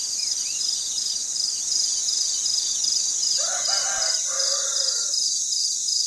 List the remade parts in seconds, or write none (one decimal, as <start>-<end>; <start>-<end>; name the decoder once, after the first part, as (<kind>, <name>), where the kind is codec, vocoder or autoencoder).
none